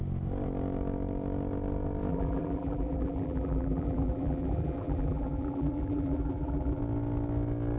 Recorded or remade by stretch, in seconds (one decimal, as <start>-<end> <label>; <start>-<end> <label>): 0.0-2.1 recorded; 2.1-6.8 remade; 6.8-7.8 recorded